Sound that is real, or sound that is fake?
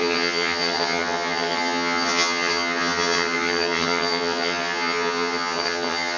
fake